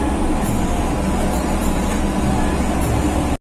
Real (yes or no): yes